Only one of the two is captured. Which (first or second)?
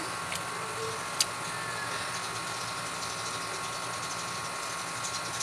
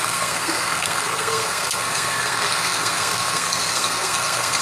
first